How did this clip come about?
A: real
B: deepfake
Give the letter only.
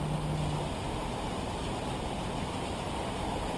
A